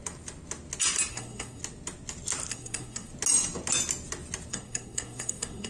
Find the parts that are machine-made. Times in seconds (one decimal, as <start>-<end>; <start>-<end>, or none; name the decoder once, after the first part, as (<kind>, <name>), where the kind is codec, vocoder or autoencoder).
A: 1.1-1.6 (codec, SNAC); 2.5-3.1; 4.5-5.7